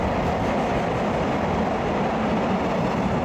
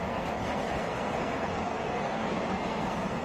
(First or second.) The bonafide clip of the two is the first